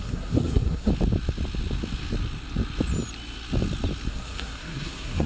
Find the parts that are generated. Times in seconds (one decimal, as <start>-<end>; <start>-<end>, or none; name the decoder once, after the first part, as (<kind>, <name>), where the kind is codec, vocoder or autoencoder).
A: 0.0-0.9 (codec, SNAC); 4.1-5.3